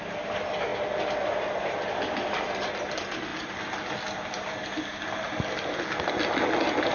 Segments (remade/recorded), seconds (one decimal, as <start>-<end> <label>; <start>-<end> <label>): 0.0-6.9 recorded